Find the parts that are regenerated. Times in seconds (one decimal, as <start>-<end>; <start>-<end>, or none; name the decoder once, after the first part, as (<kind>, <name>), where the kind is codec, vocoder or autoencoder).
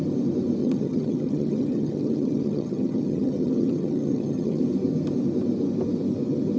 0.6-4.6 (vocoder, HiFi-GAN)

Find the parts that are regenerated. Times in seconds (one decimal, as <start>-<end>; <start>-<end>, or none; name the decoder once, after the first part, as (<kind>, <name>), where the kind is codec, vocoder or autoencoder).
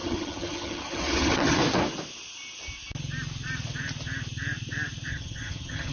0.0-1.6 (vocoder, HiFi-GAN); 5.1-5.9